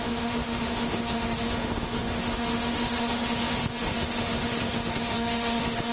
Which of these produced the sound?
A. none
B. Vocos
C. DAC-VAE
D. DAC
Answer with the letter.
C